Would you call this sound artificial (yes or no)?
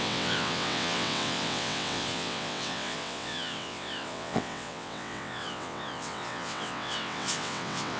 yes